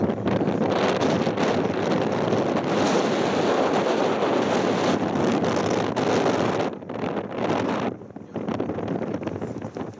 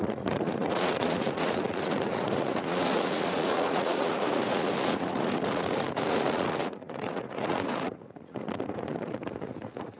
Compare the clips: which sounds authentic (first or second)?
first